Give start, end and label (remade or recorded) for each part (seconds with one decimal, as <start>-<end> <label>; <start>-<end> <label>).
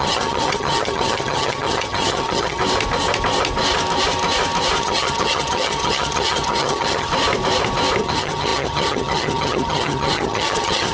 0.0-2.6 remade; 2.6-4.8 recorded; 4.8-7.1 remade; 7.1-8.0 recorded; 8.0-10.9 remade